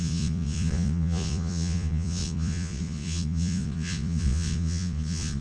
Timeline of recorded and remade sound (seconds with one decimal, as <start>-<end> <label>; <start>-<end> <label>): 0.0-5.4 remade